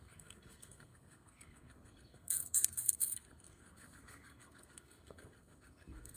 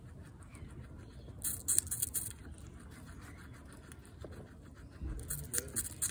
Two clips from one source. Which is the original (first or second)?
second